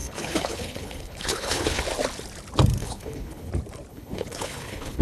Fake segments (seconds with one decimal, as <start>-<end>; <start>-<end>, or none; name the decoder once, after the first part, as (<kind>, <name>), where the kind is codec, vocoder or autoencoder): 0.0-1.8 (codec, HILCodec); 2.8-3.5; 3.9-5.0